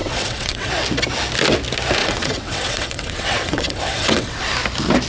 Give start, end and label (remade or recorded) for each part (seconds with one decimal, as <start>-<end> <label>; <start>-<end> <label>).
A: 0.0-0.7 remade; 0.7-2.0 recorded; 2.0-4.4 remade; 4.4-5.1 recorded